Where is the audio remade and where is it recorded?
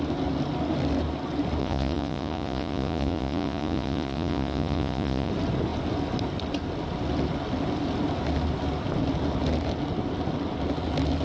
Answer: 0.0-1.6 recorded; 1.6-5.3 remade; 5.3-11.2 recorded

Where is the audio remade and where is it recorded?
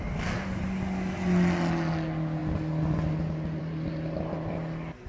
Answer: 0.0-5.1 recorded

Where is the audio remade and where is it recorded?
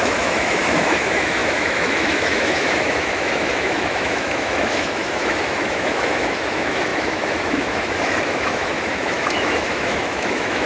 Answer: 0.0-10.7 remade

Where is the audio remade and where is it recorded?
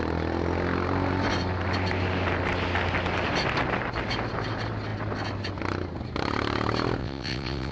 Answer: 0.0-7.0 recorded; 7.0-7.7 remade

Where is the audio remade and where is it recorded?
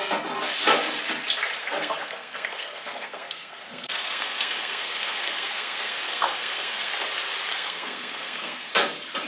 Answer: 0.0-1.6 recorded; 1.6-6.9 remade; 6.9-7.5 recorded; 7.5-8.7 remade; 8.7-9.3 recorded